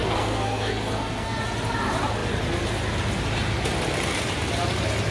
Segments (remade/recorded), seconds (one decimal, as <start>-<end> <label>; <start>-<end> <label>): 0.0-1.4 remade; 1.4-5.1 recorded